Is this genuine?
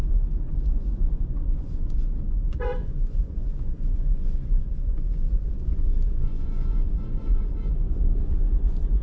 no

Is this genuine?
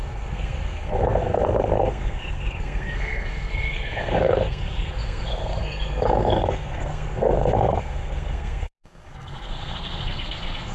no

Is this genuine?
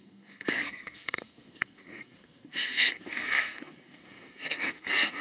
no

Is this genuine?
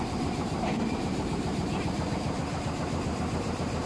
no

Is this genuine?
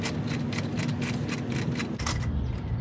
yes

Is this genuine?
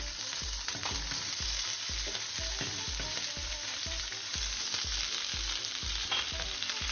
no